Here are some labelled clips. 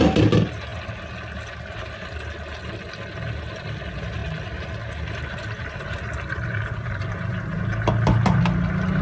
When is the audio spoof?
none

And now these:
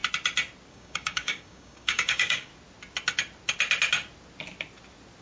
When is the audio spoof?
0.7-2.5 (codec, DAC)

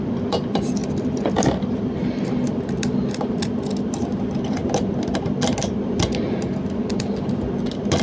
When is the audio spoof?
0.0-4.6 (vocoder, BigVGAN v2); 7.6-8.0

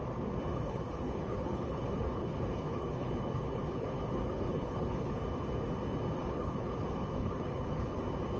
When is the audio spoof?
0.5-5.2 (codec, HILCodec); 6.2-8.0

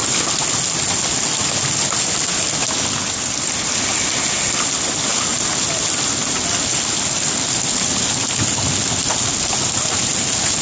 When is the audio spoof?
none

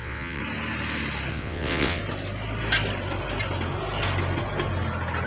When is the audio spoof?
0.0-0.4 (vocoder, WaveNeXt); 1.3-2.0